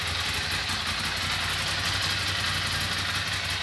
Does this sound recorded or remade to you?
recorded